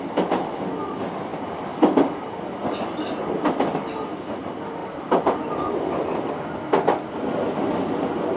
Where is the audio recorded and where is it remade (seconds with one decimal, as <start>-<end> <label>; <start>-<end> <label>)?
0.0-1.3 recorded; 1.3-2.4 remade; 2.4-4.8 recorded; 4.8-5.5 remade; 5.5-8.4 recorded